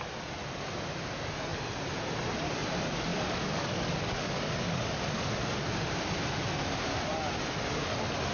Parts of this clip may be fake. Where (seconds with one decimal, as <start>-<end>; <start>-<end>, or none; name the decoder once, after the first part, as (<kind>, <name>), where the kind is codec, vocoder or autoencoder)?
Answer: 3.1-5.3 (codec, DAC)

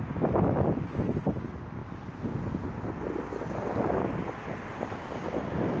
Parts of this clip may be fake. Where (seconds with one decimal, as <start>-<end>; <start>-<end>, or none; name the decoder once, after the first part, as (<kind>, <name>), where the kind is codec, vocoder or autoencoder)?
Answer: none

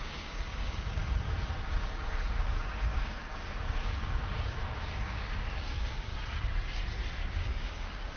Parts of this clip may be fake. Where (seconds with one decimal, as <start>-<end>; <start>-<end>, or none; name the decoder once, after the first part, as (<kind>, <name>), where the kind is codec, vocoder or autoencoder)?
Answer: 0.0-1.0 (codec, DAC); 2.2-6.1; 7.3-8.2

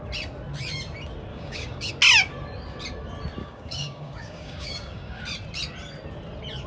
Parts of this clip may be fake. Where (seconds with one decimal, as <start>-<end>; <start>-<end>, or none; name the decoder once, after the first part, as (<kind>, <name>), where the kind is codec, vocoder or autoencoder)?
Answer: 1.3-1.9 (codec, DAC); 3.4-5.2